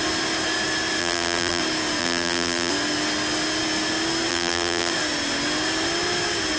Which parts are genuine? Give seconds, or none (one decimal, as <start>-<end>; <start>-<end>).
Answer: 0.0-1.0; 1.6-2.0; 2.7-4.3; 4.9-6.6